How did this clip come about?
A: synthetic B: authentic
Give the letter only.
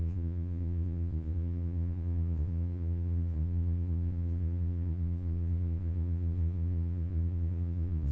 A